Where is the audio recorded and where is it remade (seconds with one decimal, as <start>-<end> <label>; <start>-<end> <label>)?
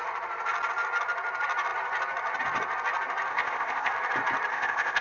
0.0-3.3 recorded; 3.3-3.9 remade; 3.9-4.5 recorded; 4.5-5.0 remade